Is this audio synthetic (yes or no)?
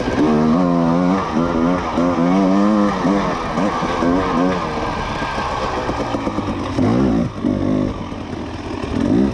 no